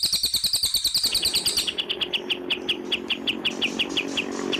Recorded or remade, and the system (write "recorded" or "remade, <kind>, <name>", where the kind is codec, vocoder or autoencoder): recorded